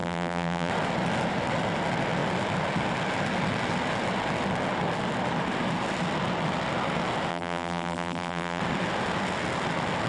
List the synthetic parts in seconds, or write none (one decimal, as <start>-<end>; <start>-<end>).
0.0-0.7; 7.3-8.6